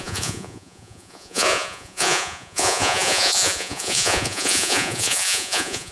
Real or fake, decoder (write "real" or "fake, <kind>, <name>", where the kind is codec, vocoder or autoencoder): fake, vocoder, Vocos